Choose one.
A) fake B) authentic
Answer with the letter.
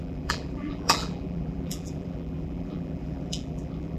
A